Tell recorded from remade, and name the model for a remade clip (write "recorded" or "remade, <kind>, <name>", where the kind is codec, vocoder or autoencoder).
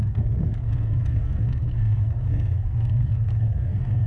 remade, codec, SNAC